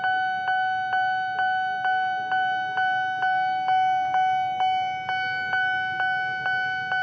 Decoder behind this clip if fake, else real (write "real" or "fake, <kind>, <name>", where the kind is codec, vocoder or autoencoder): real